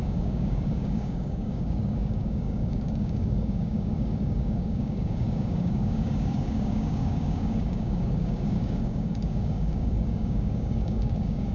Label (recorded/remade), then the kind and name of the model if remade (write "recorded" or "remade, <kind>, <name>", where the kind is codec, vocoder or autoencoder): remade, codec, DAC